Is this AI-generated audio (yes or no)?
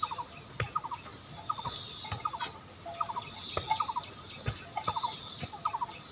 no